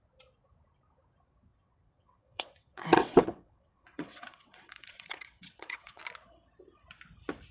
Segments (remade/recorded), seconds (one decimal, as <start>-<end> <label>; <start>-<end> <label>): 0.0-1.5 recorded; 1.5-6.0 remade; 6.0-7.5 recorded